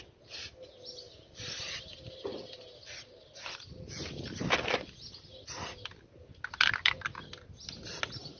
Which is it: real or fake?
real